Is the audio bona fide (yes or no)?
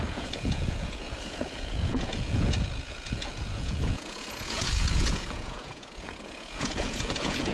no